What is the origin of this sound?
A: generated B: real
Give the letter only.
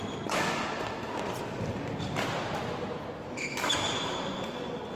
B